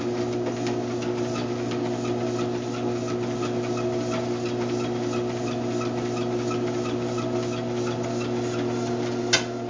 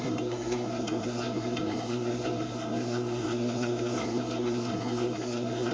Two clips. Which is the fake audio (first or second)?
second